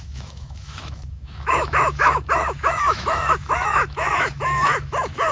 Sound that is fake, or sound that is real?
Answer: fake